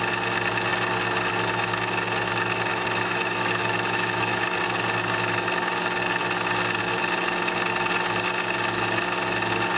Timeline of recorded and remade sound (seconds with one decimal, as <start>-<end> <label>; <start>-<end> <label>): 0.0-2.7 recorded; 2.7-4.6 remade; 4.6-9.8 recorded